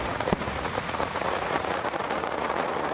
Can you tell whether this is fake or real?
fake